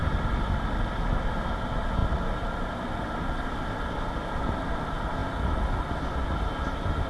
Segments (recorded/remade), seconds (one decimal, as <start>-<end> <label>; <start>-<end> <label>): 0.0-7.1 recorded